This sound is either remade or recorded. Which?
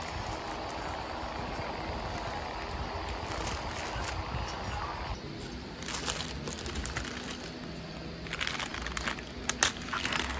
recorded